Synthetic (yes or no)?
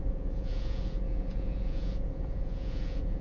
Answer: yes